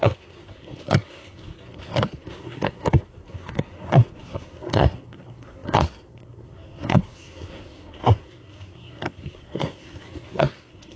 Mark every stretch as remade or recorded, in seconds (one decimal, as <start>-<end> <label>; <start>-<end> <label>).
0.0-11.0 remade

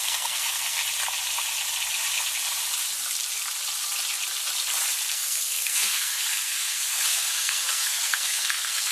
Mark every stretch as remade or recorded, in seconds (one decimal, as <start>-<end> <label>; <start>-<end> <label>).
0.0-0.8 remade; 0.8-5.1 recorded; 5.1-8.9 remade

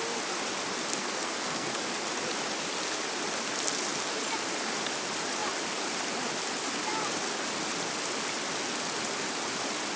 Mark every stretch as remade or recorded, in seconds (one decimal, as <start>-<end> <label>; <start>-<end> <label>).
0.0-1.0 recorded; 1.0-1.8 remade; 1.8-10.0 recorded